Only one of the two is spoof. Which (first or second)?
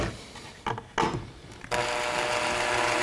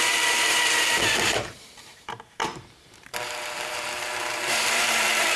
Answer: second